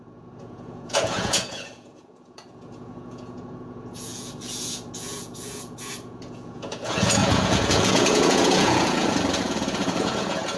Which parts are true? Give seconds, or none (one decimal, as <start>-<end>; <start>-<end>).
none